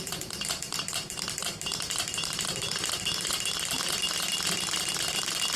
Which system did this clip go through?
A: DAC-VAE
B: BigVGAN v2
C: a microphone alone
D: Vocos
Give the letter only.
B